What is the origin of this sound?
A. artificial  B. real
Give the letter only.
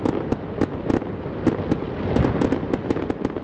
B